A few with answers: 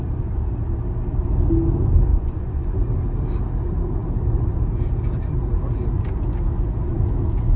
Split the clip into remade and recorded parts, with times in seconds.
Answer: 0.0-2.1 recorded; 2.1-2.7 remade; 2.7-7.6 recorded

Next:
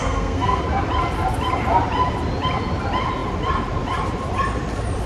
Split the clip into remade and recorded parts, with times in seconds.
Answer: 0.0-0.6 remade; 0.6-5.1 recorded

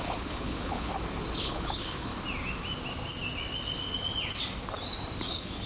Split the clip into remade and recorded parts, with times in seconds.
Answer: 0.0-0.9 remade; 0.9-1.4 recorded; 1.4-2.1 remade; 2.1-5.3 recorded; 5.3-5.7 remade

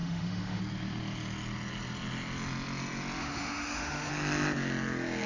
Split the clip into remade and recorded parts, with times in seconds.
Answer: 0.0-0.6 remade; 0.6-3.2 recorded; 3.2-4.1 remade; 4.1-5.3 recorded